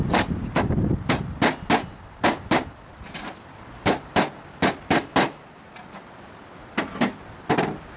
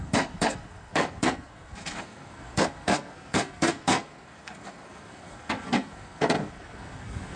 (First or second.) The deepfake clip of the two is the second